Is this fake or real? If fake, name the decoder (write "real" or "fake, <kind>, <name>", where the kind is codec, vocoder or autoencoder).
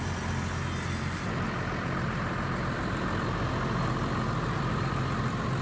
real